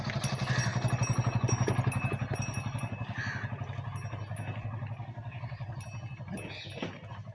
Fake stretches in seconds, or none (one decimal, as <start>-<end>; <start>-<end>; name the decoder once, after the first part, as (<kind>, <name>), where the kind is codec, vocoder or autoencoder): none